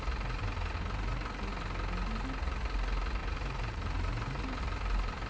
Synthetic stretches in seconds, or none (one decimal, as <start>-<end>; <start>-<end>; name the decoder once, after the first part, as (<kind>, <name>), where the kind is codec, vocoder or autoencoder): 3.2-4.6 (vocoder, BigVGAN v2)